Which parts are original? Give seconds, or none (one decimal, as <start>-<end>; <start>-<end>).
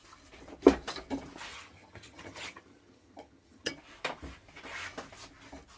0.0-1.5; 3.7-5.8